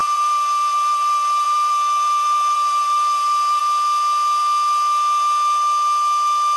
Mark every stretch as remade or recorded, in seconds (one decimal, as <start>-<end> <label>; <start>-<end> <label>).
0.0-3.6 remade; 3.6-6.6 recorded